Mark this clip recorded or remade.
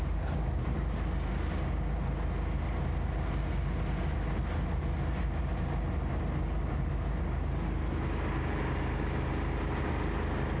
recorded